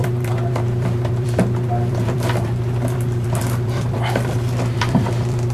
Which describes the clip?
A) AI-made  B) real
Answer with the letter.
A